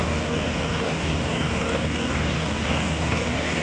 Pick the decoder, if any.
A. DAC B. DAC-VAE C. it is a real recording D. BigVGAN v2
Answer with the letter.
A